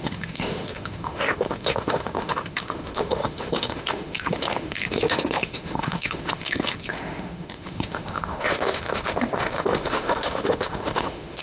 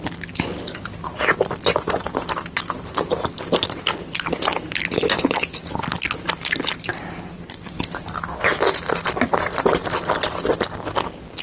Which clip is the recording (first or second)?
second